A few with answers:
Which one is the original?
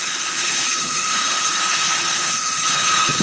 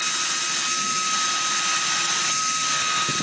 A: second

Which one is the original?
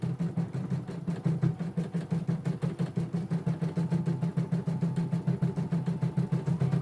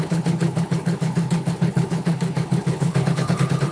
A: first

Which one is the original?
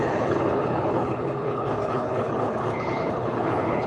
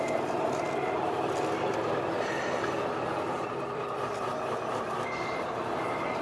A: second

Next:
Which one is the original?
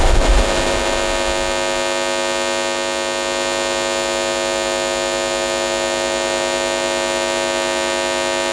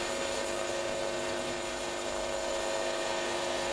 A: first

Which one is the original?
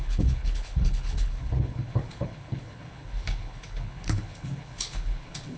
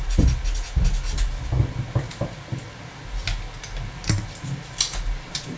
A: second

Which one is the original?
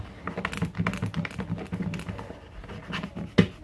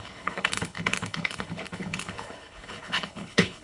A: first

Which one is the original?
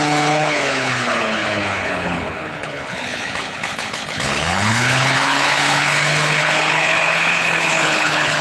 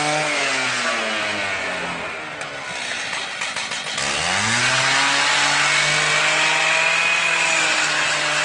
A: second